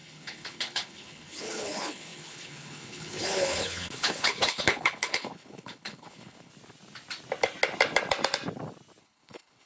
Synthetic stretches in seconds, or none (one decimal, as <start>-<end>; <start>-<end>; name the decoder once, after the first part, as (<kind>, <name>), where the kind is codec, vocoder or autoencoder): 0.0-6.5 (codec, HILCodec); 9.0-9.7